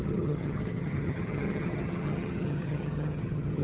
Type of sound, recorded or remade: remade